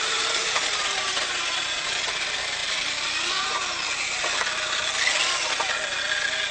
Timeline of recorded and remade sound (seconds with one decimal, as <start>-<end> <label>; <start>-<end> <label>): 0.0-1.6 remade; 1.6-6.5 recorded